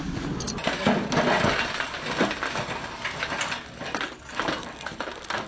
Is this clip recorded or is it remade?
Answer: recorded